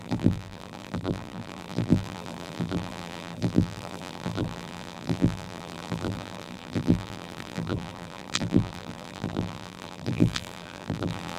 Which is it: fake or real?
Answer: fake